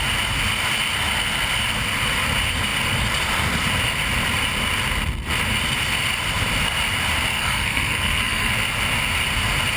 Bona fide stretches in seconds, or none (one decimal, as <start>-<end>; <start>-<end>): 0.0-7.3; 8.5-9.8